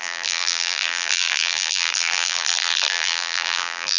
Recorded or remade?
remade